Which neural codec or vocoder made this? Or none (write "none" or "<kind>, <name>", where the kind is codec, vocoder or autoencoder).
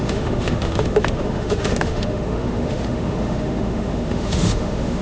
autoencoder, DAC-VAE